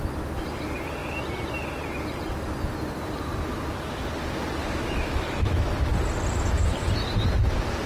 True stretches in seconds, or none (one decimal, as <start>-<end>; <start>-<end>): 0.0-4.6; 5.7-7.9